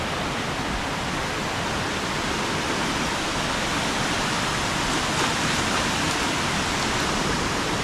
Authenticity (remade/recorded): recorded